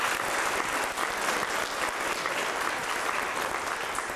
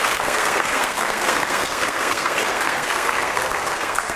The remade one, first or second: second